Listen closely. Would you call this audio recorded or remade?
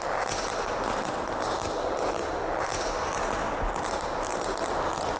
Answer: recorded